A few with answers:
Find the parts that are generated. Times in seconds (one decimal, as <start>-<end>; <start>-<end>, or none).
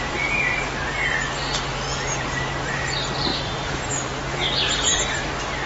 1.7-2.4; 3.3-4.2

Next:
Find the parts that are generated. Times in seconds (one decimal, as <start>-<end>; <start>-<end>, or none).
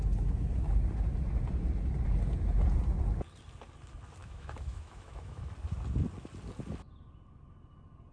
4.2-5.5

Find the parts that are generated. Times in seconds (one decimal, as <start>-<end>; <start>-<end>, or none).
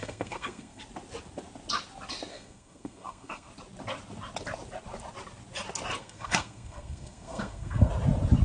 0.0-0.8; 2.3-3.5; 6.0-7.9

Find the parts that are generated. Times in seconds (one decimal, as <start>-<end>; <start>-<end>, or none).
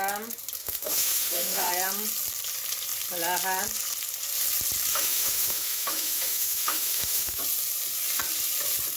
0.6-1.7; 4.9-7.4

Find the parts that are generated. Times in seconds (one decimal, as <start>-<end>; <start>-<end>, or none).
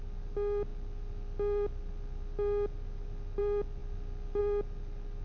none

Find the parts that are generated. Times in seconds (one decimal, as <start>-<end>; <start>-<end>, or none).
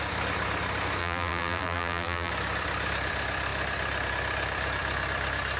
1.0-2.3